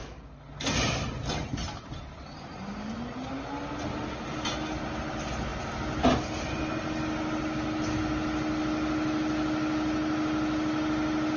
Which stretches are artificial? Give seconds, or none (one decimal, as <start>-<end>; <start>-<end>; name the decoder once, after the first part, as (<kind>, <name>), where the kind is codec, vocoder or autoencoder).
none